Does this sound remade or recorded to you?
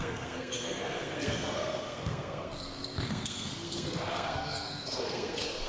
remade